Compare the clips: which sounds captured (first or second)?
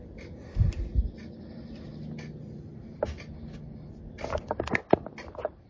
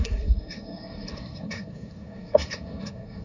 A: first